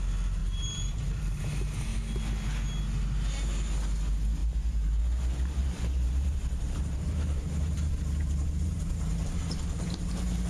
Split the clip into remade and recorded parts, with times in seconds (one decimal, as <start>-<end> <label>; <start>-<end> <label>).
0.0-0.4 recorded; 0.4-1.4 remade; 1.4-4.4 recorded; 4.4-5.0 remade; 5.0-5.6 recorded; 5.6-10.5 remade